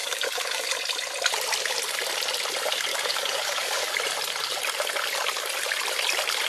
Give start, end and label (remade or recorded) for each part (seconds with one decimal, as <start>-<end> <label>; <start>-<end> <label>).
0.0-0.7 remade; 0.7-2.9 recorded; 2.9-3.9 remade; 3.9-6.5 recorded